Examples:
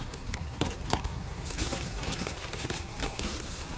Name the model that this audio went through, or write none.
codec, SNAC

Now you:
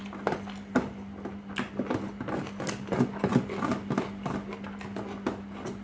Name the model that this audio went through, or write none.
none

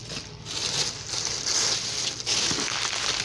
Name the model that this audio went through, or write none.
none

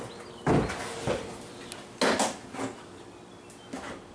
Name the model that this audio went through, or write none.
none